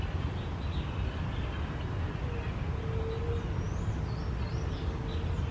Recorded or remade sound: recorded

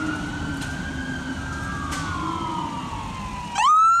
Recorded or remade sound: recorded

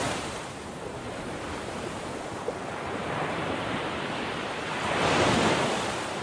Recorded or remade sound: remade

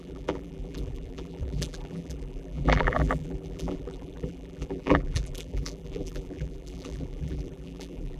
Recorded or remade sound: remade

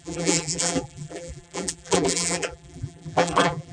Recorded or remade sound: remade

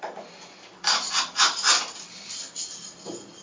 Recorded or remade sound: recorded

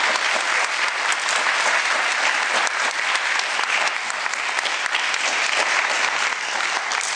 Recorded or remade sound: remade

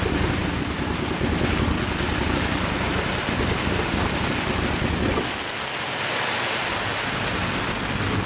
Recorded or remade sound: recorded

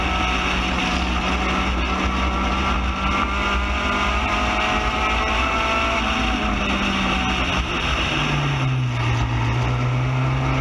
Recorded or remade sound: recorded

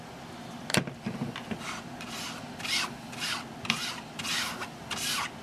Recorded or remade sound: recorded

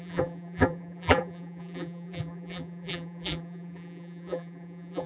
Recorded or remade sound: remade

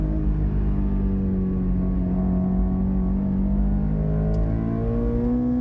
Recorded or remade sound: recorded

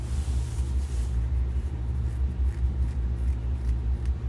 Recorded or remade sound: remade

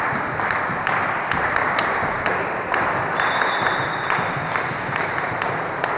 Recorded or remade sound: remade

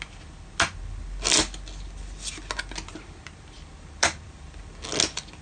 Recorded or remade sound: recorded